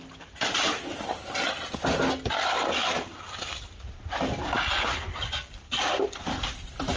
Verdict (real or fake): real